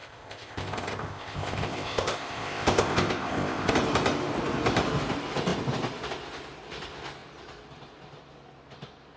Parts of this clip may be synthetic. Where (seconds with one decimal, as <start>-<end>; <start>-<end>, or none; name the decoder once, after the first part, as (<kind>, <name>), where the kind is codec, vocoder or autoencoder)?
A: 0.0-3.7 (codec, ZipCodec)